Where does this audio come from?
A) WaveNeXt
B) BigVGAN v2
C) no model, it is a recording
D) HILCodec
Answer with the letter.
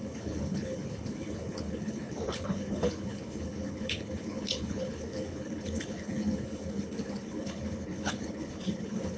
D